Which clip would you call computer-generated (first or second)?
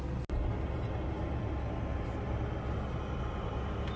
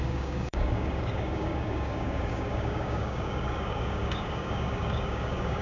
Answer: second